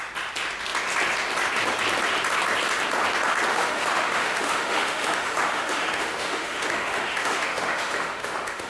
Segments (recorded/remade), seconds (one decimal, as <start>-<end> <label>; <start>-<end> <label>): 0.0-3.5 recorded; 3.5-8.7 remade